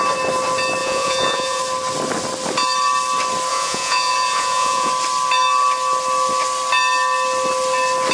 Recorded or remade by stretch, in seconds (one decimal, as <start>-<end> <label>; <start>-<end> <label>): 0.0-0.8 recorded; 0.8-1.6 remade; 1.6-3.5 recorded; 3.5-4.9 remade; 4.9-8.1 recorded